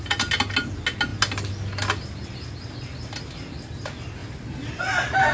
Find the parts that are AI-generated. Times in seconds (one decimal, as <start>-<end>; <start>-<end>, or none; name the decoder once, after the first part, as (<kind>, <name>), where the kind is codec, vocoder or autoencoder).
none